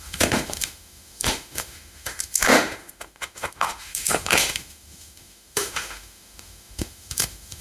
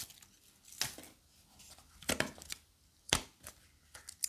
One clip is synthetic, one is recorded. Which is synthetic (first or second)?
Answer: first